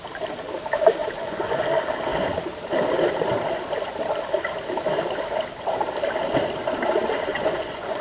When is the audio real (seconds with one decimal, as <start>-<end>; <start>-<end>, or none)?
0.0-1.0; 1.6-7.3